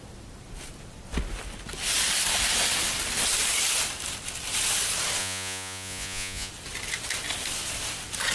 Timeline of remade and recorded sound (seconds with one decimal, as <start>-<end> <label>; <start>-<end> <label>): 0.0-5.2 recorded; 5.2-6.5 remade; 6.5-8.3 recorded